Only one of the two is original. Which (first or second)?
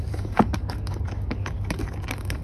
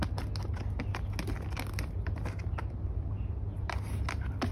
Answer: second